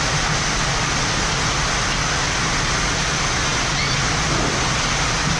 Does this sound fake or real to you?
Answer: real